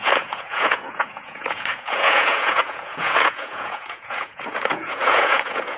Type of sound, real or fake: fake